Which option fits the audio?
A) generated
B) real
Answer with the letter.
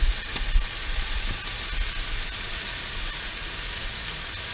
B